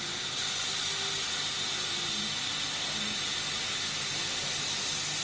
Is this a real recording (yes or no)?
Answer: yes